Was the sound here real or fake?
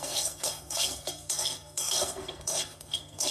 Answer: fake